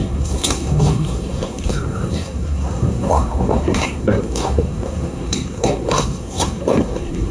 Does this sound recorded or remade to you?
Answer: remade